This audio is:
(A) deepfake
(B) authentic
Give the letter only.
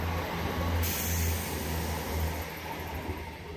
B